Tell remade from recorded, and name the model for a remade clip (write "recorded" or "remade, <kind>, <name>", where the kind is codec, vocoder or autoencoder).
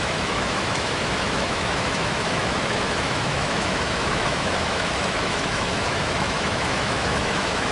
remade, autoencoder, DAC-VAE